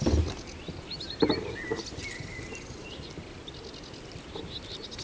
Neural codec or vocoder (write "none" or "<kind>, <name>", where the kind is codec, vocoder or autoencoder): none